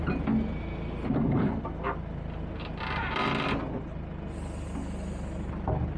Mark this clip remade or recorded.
recorded